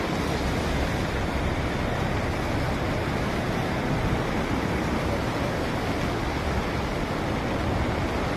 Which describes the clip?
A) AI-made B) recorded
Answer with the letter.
B